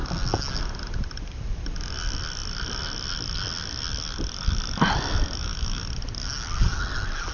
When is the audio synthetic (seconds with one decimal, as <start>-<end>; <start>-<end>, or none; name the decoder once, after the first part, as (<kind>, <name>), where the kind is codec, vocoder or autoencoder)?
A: none